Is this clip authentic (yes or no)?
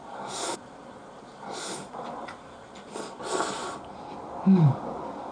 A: no